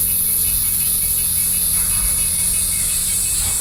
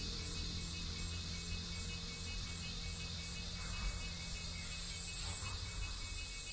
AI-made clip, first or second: first